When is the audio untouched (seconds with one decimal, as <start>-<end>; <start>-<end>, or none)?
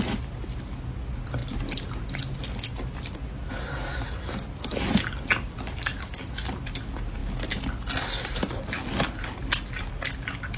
0.0-10.6